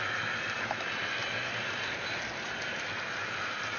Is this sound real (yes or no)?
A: yes